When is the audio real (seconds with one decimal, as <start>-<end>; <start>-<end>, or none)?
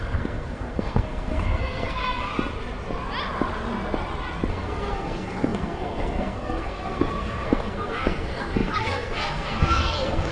2.3-4.5